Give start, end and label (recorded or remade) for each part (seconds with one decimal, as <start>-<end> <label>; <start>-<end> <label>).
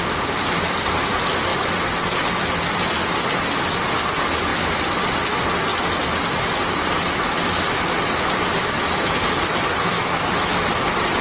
0.0-9.8 recorded; 9.8-10.3 remade; 10.3-11.2 recorded